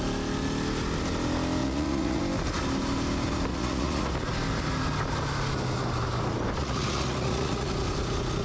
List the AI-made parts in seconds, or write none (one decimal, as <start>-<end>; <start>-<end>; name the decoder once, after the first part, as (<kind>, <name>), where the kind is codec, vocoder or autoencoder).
1.6-2.2 (vocoder, Vocos); 3.5-4.1; 6.6-7.7